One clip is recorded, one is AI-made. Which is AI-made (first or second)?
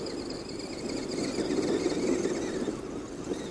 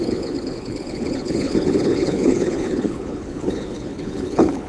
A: second